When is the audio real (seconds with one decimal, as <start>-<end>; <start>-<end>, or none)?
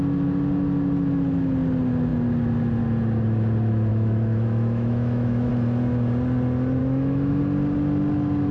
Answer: 0.0-3.9; 5.5-6.8; 7.4-8.5